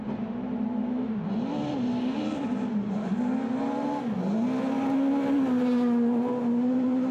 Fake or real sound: real